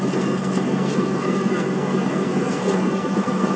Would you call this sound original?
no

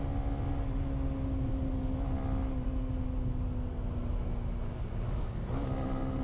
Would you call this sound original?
yes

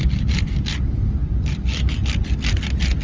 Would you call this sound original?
yes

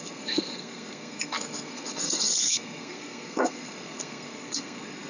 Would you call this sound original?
no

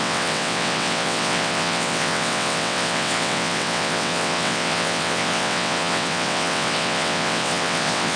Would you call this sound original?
no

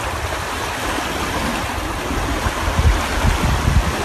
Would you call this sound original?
yes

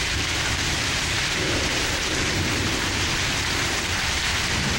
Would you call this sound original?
yes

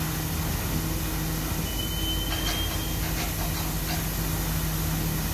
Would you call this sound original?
yes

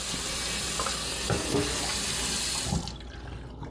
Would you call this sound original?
yes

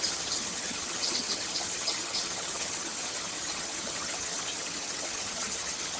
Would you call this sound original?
no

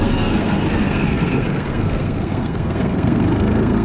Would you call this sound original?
no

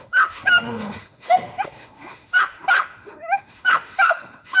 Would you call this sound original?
no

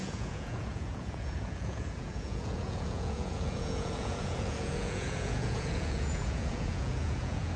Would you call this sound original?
no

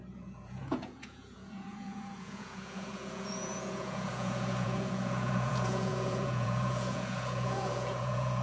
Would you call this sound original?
no